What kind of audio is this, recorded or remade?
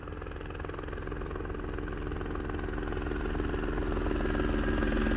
recorded